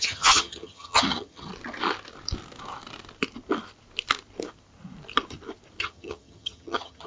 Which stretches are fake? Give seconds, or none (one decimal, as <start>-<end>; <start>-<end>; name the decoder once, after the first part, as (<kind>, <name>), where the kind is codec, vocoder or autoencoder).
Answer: 0.0-1.5 (vocoder, HiFi-GAN); 5.8-7.1